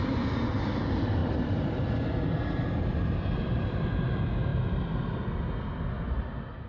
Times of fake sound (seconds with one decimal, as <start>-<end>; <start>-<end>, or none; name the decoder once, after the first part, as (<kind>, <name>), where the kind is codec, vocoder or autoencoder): 1.2-1.9 (vocoder, BigVGAN v2); 4.5-5.3